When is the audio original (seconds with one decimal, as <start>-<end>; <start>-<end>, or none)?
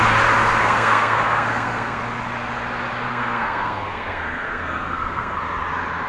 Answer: 0.0-0.6; 2.0-3.1; 5.4-6.1